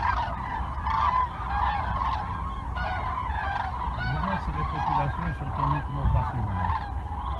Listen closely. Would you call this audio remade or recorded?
recorded